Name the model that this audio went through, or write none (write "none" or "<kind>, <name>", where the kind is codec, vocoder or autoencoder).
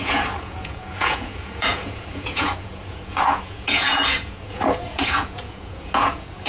vocoder, Vocos